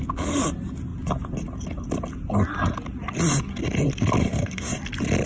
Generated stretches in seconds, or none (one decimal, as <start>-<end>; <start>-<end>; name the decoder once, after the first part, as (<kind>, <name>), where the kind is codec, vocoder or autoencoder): 4.2-4.7 (autoencoder, DAC-VAE)